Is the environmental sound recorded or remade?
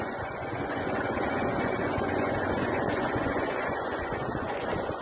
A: remade